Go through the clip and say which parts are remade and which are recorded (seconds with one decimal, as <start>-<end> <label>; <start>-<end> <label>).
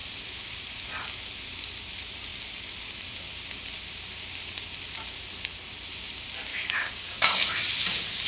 0.0-6.5 recorded; 6.5-7.5 remade; 7.5-8.3 recorded